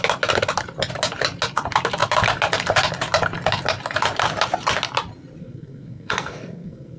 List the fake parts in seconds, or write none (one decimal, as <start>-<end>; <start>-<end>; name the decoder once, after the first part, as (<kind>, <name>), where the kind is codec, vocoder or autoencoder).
5.4-7.0 (codec, SNAC)